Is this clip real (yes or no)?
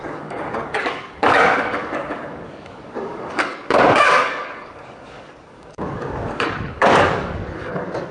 no